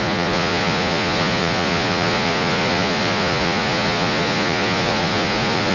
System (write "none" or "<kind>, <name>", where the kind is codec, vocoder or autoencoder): vocoder, Vocos